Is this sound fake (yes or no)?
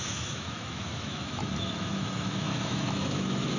yes